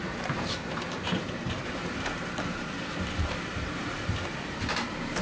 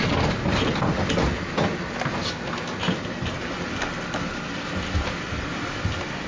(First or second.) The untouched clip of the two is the second